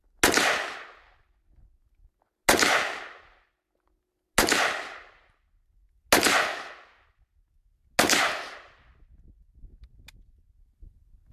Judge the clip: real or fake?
real